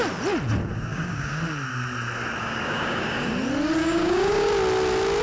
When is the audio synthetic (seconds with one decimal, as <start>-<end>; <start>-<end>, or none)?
0.9-1.4; 2.4-3.3; 3.8-4.5